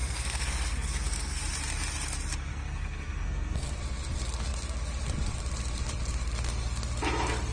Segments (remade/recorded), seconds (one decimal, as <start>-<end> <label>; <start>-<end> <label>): 0.0-1.4 remade; 1.4-2.5 recorded; 2.5-3.8 remade; 3.8-7.5 recorded